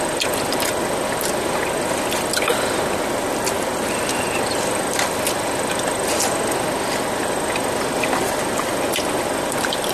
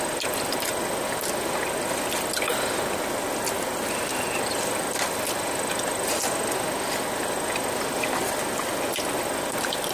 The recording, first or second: second